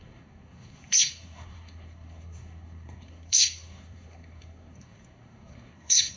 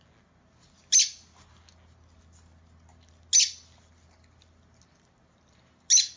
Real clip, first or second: second